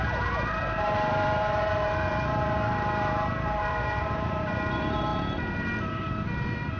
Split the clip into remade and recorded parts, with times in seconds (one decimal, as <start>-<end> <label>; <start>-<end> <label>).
0.0-6.8 remade